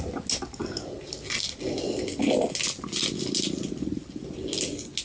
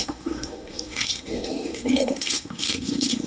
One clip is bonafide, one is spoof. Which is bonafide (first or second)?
first